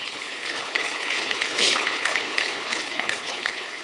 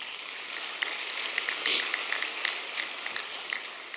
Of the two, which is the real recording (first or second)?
second